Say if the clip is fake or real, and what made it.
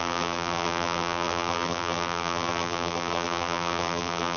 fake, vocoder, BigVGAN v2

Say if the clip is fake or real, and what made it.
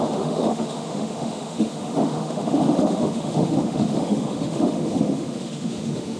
fake, autoencoder, DAC-VAE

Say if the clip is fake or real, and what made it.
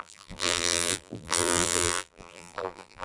fake, vocoder, BigVGAN v2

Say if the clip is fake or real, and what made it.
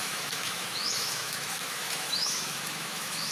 fake, autoencoder, DAC-VAE